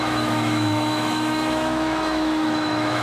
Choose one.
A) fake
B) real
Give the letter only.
A